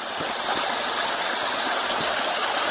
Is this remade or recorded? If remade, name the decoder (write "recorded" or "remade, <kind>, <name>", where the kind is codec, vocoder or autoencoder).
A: recorded